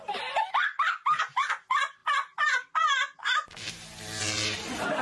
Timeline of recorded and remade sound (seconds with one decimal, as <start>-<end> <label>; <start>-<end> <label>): 0.0-5.0 recorded